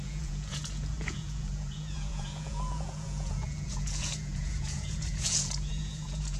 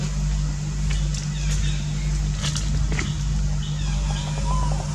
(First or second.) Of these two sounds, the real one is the second